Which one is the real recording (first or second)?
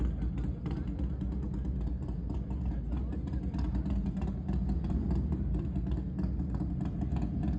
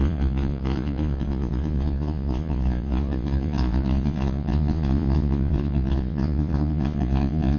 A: first